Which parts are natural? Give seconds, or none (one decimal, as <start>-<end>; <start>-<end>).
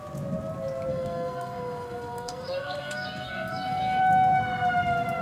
0.0-0.9; 4.0-5.2